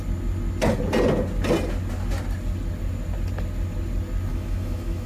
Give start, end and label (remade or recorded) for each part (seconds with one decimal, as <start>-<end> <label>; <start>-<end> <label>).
0.0-4.3 recorded; 4.3-5.1 remade

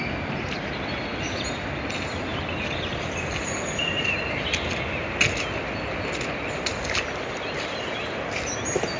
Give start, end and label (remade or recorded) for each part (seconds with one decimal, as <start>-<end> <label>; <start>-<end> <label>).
0.0-9.0 recorded